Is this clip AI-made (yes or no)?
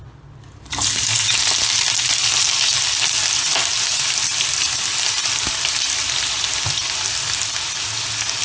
no